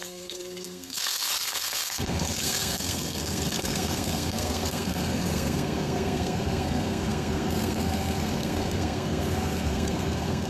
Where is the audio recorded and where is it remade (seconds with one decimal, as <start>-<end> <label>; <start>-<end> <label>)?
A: 0.0-10.5 remade

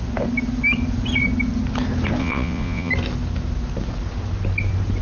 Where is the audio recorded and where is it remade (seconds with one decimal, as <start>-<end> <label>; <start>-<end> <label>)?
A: 0.0-2.2 recorded; 2.2-2.9 remade; 2.9-5.0 recorded

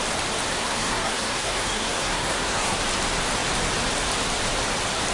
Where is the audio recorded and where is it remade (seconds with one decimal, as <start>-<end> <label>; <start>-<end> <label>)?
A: 0.0-0.5 recorded; 0.5-2.8 remade; 2.8-5.1 recorded

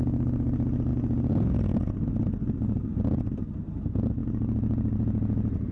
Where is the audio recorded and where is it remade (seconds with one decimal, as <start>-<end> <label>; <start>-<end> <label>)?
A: 0.0-4.2 recorded; 4.2-5.7 remade

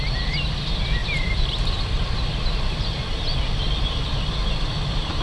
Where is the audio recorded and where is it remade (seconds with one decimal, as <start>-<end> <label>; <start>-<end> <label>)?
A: 0.0-5.2 recorded

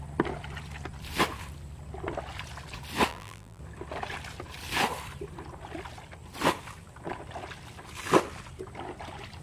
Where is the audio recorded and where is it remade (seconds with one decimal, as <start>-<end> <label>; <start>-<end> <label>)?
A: 0.0-3.1 recorded; 3.1-3.6 remade; 3.6-9.4 recorded